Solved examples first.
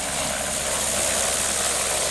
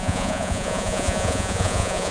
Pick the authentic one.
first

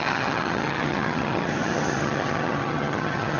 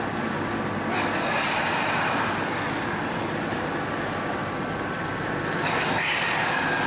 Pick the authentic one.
second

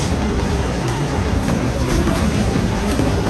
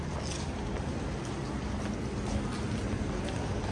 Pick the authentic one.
second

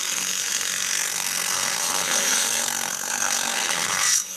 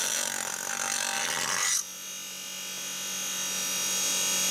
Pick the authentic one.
second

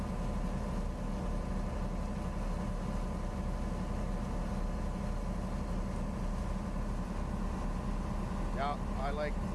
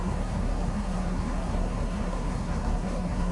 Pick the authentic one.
first